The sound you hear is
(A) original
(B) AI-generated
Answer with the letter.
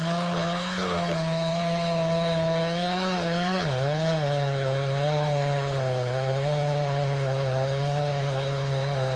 B